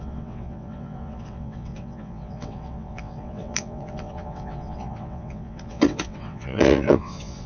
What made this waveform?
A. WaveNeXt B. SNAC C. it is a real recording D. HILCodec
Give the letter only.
A